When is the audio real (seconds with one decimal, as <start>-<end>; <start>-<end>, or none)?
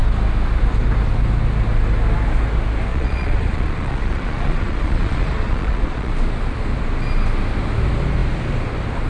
0.0-2.9; 6.1-9.1